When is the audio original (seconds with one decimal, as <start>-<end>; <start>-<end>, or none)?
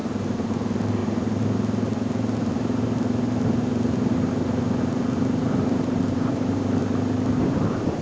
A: 1.0-5.8; 6.8-7.4